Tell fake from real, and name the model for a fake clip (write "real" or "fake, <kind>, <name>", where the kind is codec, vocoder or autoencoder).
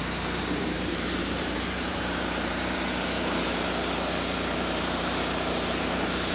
fake, vocoder, BigVGAN v2